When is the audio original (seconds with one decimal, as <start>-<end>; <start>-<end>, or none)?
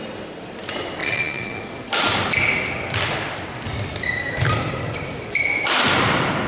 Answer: 0.0-1.0; 1.6-6.5